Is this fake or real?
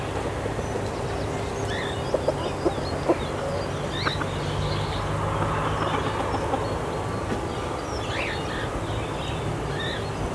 real